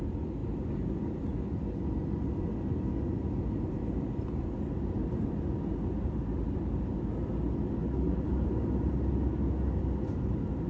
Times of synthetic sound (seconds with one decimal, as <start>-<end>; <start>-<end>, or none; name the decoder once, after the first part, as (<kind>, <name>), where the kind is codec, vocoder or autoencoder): 7.8-8.3 (vocoder, BigVGAN v2)